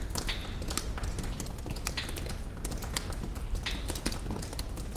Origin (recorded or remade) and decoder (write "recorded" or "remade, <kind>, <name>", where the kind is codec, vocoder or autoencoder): recorded